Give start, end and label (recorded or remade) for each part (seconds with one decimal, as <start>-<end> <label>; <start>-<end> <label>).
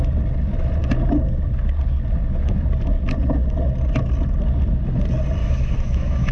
0.0-5.4 recorded; 5.4-6.3 remade